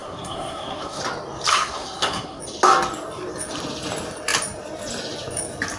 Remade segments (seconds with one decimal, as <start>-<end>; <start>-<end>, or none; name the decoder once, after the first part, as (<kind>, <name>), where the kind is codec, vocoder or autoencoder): 0.0-1.0 (codec, SNAC); 1.5-2.4